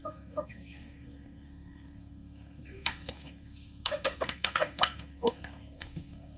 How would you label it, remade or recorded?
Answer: remade